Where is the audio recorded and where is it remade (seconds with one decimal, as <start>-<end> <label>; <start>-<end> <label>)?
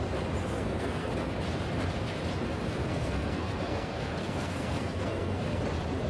0.0-0.4 recorded; 0.4-1.1 remade; 1.1-2.8 recorded; 2.8-5.6 remade; 5.6-6.1 recorded